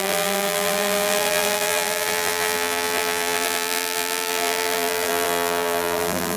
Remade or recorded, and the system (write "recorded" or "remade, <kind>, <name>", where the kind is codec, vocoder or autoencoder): remade, vocoder, BigVGAN v2